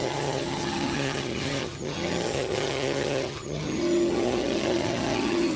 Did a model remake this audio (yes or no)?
yes